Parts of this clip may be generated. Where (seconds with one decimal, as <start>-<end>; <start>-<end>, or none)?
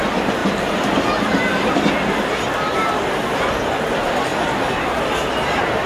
0.4-0.9